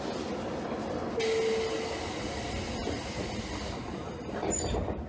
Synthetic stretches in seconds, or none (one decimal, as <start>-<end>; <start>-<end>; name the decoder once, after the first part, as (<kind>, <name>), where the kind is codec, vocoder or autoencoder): none